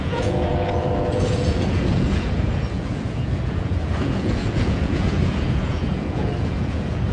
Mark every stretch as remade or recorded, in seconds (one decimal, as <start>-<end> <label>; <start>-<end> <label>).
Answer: 0.0-7.1 remade